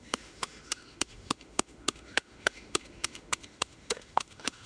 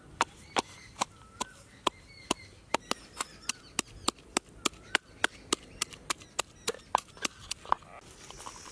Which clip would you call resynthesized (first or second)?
first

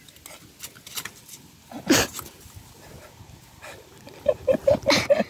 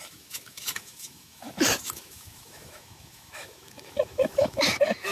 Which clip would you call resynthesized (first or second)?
second